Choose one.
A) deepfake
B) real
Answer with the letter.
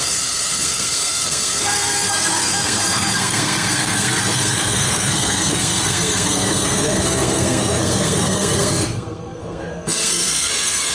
A